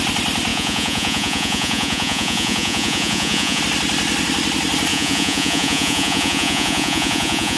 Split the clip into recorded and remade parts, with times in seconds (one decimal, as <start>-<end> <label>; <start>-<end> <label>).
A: 0.0-0.5 recorded; 0.5-3.6 remade; 3.6-4.9 recorded; 4.9-7.6 remade